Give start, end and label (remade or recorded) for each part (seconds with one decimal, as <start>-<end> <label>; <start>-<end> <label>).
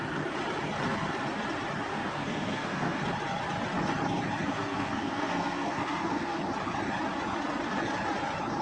0.0-1.9 recorded; 1.9-3.0 remade; 3.0-4.5 recorded; 4.5-6.4 remade; 6.4-8.6 recorded